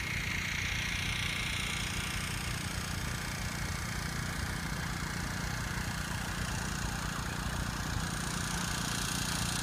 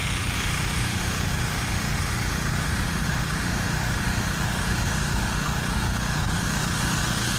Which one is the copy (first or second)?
second